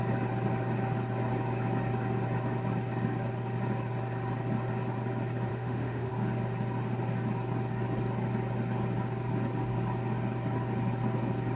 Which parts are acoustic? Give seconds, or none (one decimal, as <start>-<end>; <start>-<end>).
0.0-5.5; 6.1-11.6